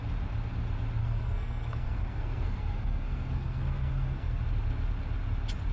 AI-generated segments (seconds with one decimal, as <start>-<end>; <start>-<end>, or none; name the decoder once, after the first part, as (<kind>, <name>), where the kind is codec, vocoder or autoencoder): 1.0-4.4 (codec, SNAC)